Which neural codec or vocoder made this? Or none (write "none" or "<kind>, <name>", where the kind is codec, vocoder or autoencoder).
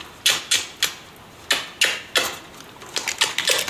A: none